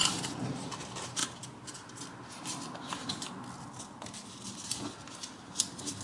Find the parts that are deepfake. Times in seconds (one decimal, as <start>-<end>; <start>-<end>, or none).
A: 0.0-0.7